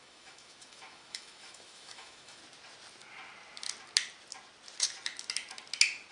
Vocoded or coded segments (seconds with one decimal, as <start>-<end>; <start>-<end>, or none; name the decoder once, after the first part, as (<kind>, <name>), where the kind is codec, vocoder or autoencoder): 0.0-2.4 (autoencoder, DAC-VAE)